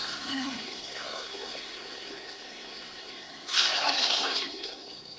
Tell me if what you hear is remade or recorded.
remade